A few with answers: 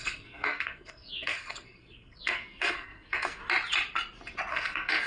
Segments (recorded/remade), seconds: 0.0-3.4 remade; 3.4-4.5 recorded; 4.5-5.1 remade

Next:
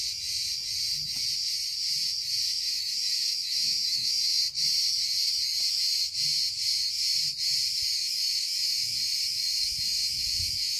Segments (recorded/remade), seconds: 0.0-2.5 recorded; 2.5-4.4 remade; 4.4-8.0 recorded; 8.0-10.8 remade

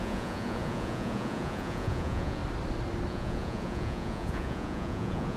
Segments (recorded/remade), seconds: 0.0-2.4 remade; 2.4-3.1 recorded; 3.1-5.4 remade

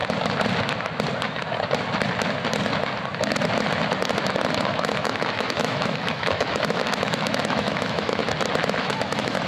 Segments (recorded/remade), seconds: 0.0-4.6 recorded; 4.6-8.2 remade; 8.2-8.8 recorded; 8.8-9.5 remade

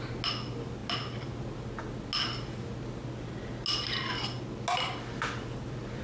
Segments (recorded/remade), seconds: 0.0-6.0 recorded